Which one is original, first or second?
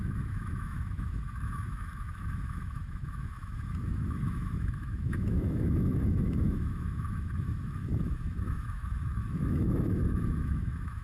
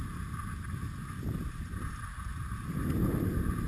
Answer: second